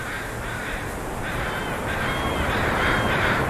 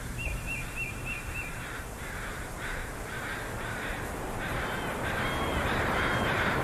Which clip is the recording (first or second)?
first